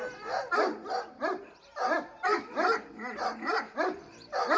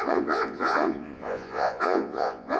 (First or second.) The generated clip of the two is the second